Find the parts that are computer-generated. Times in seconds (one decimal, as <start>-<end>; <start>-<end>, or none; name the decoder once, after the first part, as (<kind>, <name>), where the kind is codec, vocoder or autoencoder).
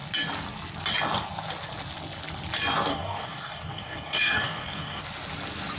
2.9-5.0 (codec, DAC)